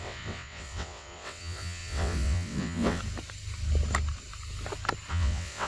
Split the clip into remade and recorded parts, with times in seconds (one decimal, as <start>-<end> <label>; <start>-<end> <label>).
0.0-3.0 remade; 3.0-5.1 recorded; 5.1-5.7 remade